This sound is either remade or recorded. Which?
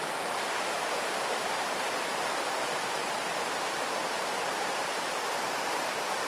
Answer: remade